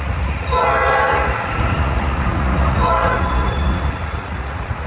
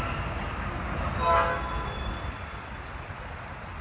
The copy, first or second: first